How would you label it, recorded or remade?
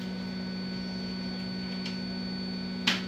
recorded